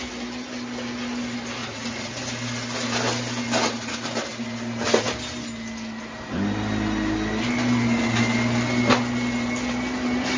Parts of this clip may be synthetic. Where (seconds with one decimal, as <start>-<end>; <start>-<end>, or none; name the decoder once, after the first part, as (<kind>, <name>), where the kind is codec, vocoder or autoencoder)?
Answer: 1.6-2.2 (vocoder, Vocos)